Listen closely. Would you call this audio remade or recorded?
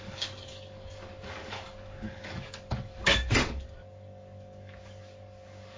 remade